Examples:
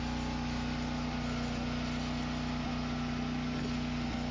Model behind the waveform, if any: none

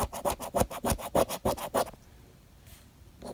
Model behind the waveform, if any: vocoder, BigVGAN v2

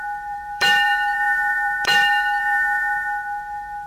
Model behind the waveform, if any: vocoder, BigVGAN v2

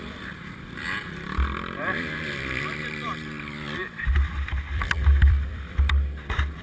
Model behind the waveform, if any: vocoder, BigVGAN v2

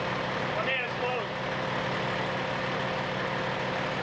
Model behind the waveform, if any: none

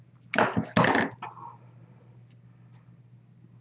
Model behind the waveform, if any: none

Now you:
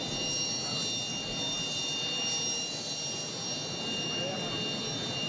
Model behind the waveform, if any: none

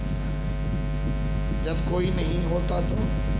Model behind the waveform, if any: none